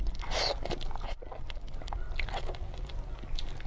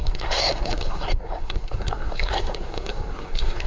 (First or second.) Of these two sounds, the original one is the first